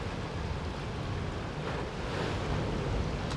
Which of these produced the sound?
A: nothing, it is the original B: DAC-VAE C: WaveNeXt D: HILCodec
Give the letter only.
A